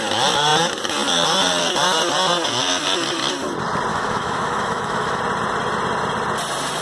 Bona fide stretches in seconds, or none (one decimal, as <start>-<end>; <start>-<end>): 0.0-3.9; 5.2-6.8